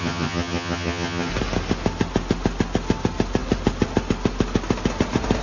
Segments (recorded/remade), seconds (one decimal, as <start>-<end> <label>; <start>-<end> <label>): 0.0-1.3 remade; 1.3-5.4 recorded